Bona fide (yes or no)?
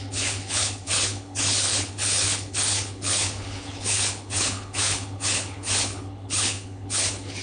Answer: no